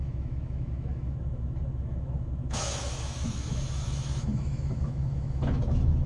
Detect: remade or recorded remade